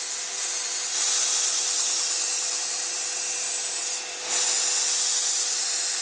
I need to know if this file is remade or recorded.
recorded